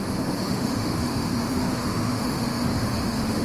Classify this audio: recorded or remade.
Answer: remade